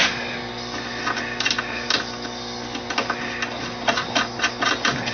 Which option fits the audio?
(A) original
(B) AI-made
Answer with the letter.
A